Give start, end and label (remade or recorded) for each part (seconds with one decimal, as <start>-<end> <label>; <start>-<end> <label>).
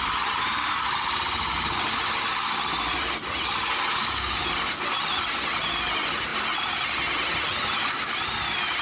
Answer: 0.0-8.8 recorded